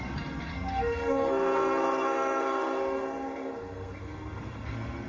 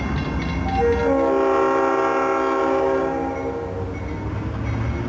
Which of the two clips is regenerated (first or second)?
first